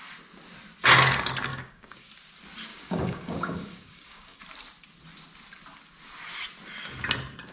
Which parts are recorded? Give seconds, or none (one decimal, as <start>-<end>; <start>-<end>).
0.0-1.5; 2.1-2.7; 4.4-7.5